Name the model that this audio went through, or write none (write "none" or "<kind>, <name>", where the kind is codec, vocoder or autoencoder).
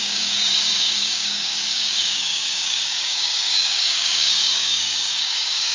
codec, DAC